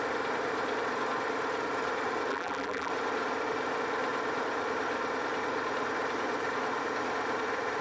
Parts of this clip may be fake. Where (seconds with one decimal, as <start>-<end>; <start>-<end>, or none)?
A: 2.3-2.9